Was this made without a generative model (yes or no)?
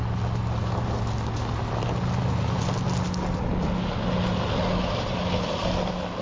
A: yes